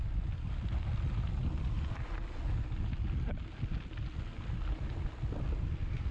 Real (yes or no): yes